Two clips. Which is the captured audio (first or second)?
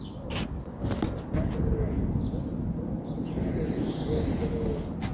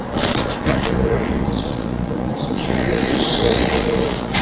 first